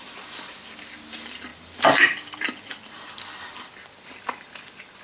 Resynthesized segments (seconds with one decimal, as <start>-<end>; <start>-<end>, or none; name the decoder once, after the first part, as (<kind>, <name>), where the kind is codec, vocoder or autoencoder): none